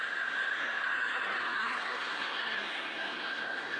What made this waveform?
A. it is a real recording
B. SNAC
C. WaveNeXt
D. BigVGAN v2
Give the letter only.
B